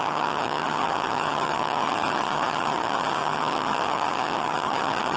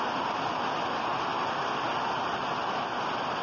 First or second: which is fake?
first